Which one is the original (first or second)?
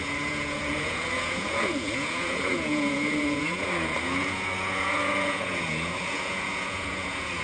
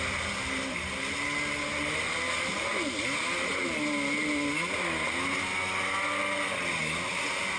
second